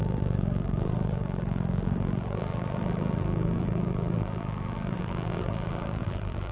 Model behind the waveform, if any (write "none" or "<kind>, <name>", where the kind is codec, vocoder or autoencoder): vocoder, BigVGAN v2